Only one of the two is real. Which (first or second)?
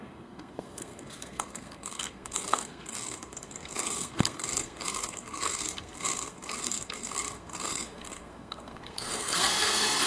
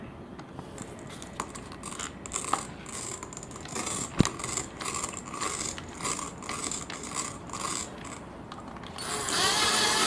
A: second